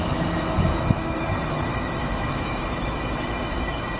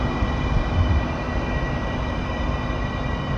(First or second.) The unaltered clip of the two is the second